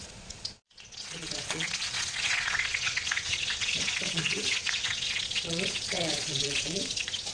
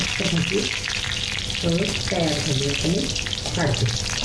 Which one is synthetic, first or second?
first